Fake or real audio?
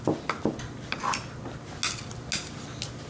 real